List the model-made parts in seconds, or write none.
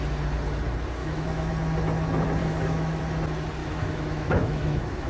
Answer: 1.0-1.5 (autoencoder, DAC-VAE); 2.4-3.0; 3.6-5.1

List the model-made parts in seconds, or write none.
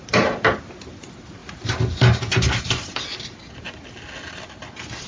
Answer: none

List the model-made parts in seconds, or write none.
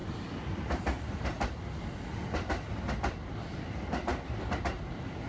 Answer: 0.0-1.1 (vocoder, BigVGAN v2)